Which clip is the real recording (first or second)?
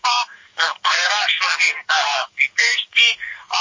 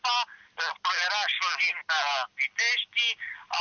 second